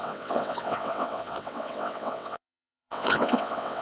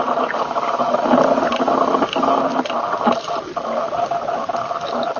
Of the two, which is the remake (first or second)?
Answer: first